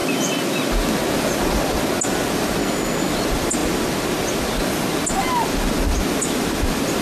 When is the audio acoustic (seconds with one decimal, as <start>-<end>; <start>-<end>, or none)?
0.0-2.6; 3.1-7.0

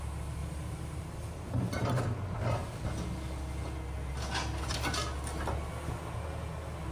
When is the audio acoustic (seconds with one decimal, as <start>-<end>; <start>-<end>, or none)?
0.0-0.4; 2.0-6.9